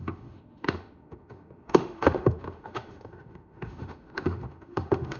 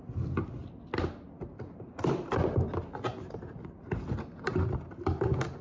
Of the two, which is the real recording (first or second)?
second